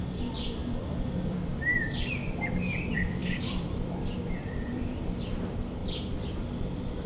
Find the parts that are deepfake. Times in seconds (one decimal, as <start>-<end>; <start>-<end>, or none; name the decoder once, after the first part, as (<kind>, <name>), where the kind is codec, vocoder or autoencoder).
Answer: 0.0-5.8 (vocoder, BigVGAN v2); 6.4-7.1